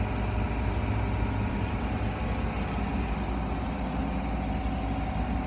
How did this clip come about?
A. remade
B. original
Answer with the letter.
B